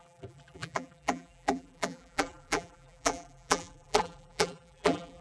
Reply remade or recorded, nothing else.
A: remade